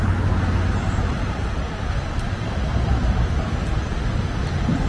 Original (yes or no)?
yes